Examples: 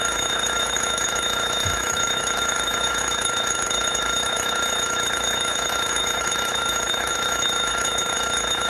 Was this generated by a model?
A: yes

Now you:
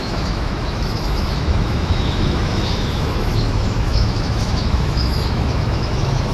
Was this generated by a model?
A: yes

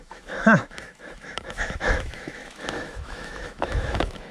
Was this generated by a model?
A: yes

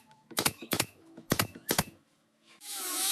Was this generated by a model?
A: yes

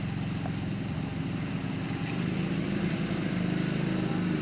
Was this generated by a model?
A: no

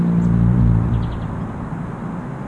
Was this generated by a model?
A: no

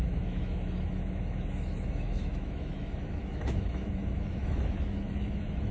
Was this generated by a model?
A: yes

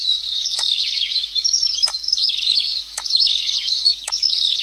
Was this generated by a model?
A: yes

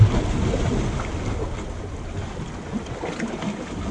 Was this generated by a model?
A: no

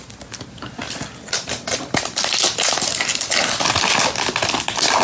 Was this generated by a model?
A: no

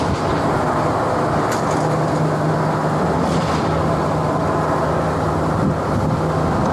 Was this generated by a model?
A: no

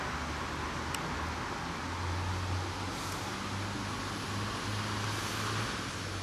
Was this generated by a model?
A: no